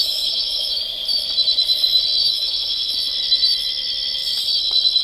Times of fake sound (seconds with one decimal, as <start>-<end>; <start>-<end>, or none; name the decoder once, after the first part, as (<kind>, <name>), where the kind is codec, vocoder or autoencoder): 0.0-0.8 (autoencoder, DAC-VAE); 2.2-2.9